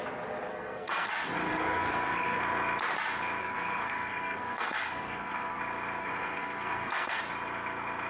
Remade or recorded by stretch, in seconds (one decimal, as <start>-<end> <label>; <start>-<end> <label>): 0.0-0.5 recorded; 0.5-1.1 remade; 1.1-1.5 recorded; 1.5-2.4 remade; 2.4-3.4 recorded; 3.4-5.6 remade; 5.6-6.0 recorded; 6.0-7.2 remade; 7.2-8.1 recorded